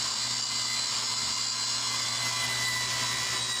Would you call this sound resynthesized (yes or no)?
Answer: no